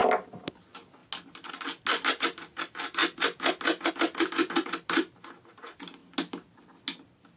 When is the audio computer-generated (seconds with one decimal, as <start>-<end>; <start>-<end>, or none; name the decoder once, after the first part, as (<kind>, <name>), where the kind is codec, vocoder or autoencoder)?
none